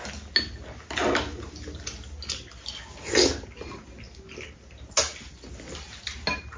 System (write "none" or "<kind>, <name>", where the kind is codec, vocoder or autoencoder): none